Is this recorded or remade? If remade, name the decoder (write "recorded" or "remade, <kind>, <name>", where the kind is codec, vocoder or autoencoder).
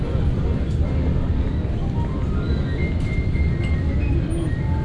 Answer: recorded